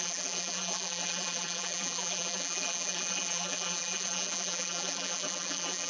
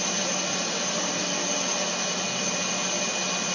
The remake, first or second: first